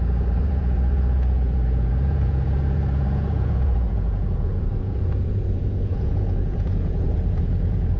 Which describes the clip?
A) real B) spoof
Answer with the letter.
B